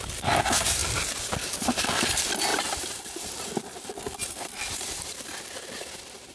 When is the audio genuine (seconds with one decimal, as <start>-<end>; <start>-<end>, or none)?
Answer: 0.0-6.3